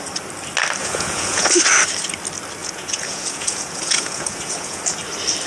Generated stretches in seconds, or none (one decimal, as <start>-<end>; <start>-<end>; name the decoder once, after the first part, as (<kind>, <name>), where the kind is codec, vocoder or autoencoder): 0.8-1.5 (vocoder, Vocos); 2.6-4.8